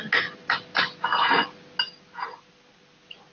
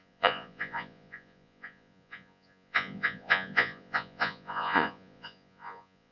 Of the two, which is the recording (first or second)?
first